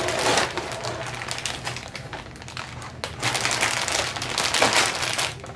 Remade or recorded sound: recorded